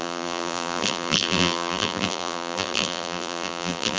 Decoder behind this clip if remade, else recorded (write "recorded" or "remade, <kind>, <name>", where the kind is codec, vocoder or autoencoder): remade, vocoder, BigVGAN v2